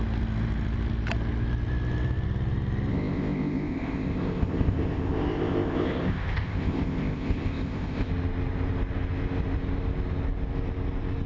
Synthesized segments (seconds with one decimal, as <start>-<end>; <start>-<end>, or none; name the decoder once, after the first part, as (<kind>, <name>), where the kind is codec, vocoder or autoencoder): 2.9-8.1 (codec, ZipCodec)